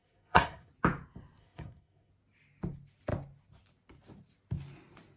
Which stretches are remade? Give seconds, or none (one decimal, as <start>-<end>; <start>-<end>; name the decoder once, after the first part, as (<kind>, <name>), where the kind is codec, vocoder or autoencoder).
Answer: 0.0-0.7 (codec, SNAC); 1.4-2.1